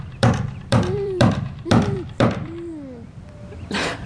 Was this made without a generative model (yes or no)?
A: no